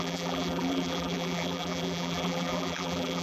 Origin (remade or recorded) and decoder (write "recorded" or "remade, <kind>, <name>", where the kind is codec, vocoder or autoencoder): remade, vocoder, BigVGAN v2